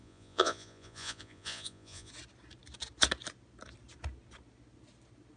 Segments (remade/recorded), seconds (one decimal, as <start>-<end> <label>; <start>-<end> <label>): 0.0-2.1 remade; 2.1-5.4 recorded